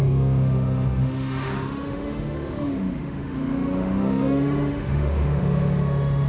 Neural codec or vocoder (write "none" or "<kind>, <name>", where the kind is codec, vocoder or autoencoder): autoencoder, DAC-VAE